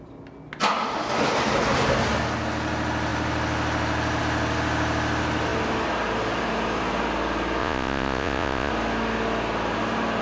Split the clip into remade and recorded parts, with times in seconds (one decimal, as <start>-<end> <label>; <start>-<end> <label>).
0.0-7.6 recorded; 7.6-8.7 remade; 8.7-10.2 recorded